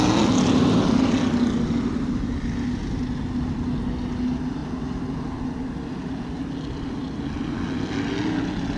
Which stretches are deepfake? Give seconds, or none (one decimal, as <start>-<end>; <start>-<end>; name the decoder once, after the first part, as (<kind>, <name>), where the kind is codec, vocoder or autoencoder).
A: none